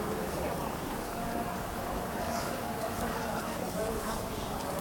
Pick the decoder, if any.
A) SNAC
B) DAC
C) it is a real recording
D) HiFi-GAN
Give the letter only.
B